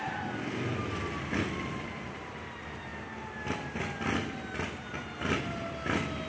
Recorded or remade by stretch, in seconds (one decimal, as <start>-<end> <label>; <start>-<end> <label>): 0.0-2.9 remade; 2.9-5.4 recorded; 5.4-6.3 remade

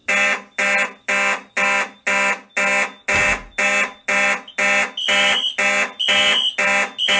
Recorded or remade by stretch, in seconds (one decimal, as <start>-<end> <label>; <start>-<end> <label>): 0.0-7.2 recorded

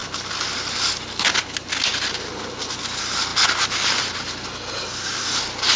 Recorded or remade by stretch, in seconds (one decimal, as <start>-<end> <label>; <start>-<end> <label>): 0.0-5.8 recorded

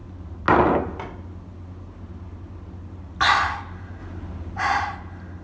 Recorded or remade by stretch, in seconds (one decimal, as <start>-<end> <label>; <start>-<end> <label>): 0.0-4.0 recorded; 4.0-4.6 remade; 4.6-5.4 recorded